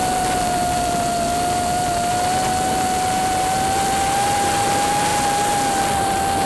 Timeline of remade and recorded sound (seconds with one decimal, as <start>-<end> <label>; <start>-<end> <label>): 0.0-6.5 recorded